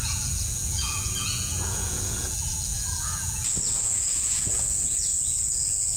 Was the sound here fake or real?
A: fake